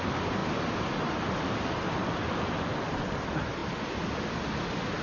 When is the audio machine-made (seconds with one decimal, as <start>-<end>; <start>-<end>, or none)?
none